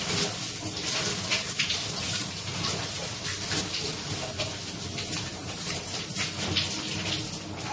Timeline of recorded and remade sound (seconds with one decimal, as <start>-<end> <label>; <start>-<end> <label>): 0.0-1.3 recorded; 1.3-3.4 remade; 3.4-5.3 recorded; 5.3-6.1 remade; 6.1-7.7 recorded